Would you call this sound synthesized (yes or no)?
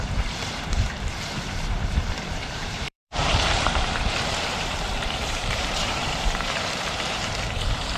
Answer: yes